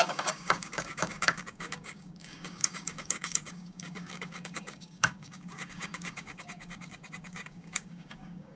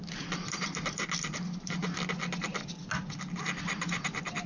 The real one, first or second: second